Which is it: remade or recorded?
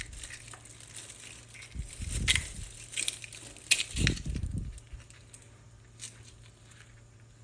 recorded